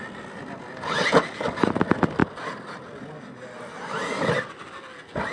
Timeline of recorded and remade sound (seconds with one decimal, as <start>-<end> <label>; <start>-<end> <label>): 0.0-5.3 recorded